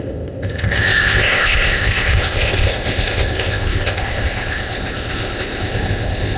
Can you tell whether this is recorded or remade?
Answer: remade